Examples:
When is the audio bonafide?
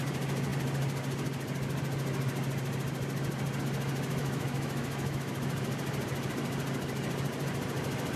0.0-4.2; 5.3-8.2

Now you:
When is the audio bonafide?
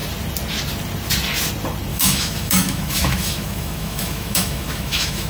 0.0-1.9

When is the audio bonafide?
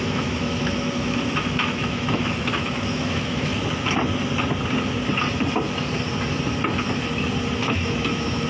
3.5-7.7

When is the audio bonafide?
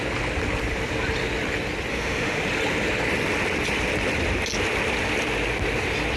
0.0-1.9; 2.4-6.2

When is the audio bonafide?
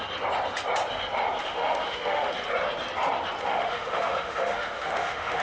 0.0-1.4; 2.3-3.4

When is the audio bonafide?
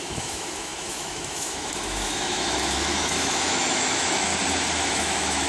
4.3-4.9